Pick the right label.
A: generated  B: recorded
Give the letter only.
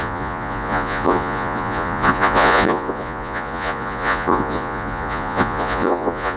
A